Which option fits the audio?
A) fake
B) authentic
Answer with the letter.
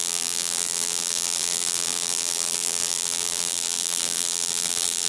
A